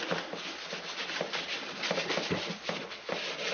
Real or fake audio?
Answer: real